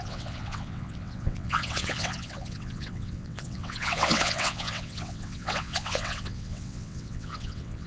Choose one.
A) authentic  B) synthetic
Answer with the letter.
B